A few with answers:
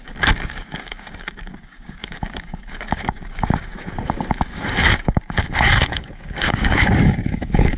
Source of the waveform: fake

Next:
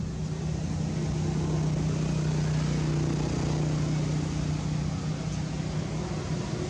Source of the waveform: real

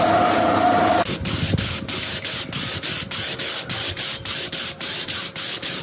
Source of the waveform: real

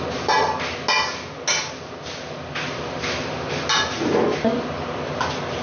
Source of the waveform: real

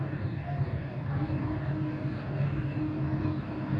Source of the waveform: fake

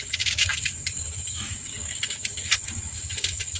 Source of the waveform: fake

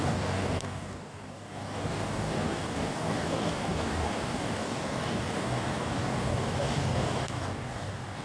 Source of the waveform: fake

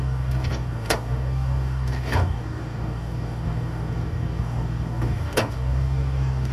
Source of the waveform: fake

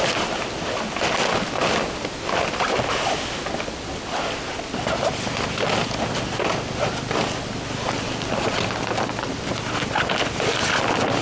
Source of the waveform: real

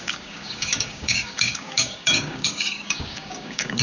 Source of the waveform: fake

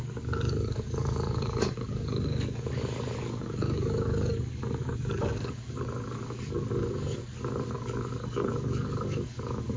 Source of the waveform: fake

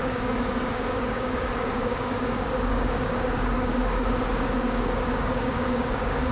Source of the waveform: fake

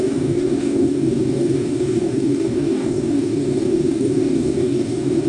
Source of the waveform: fake